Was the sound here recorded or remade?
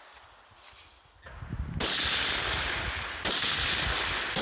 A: recorded